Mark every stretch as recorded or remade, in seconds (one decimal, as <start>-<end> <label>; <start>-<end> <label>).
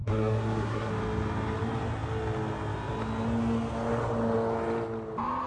0.0-0.9 remade; 0.9-5.5 recorded